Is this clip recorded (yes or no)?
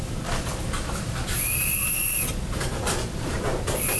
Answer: no